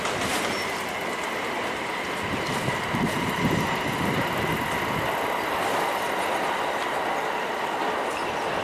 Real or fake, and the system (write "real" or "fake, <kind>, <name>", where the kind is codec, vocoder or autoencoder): real